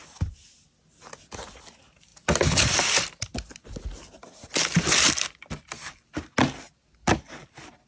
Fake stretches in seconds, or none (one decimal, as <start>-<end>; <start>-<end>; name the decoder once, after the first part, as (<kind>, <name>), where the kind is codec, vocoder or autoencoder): none